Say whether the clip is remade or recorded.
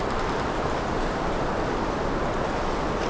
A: recorded